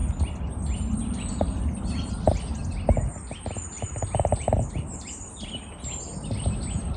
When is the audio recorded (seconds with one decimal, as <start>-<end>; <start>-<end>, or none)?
0.0-7.0